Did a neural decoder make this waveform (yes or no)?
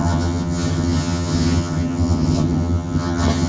yes